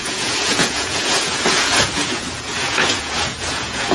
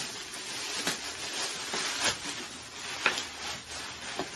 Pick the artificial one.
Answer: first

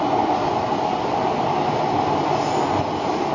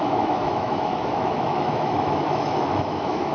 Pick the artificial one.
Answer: second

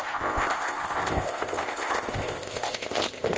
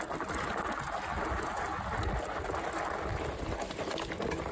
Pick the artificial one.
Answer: first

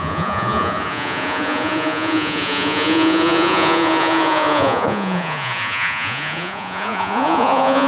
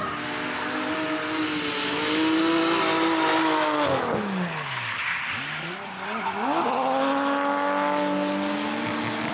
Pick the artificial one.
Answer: first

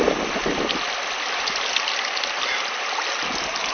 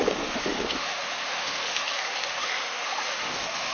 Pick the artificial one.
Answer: second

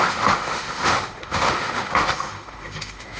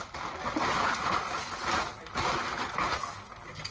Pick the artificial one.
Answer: first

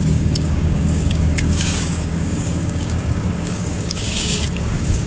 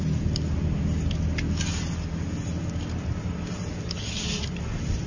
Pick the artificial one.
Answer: first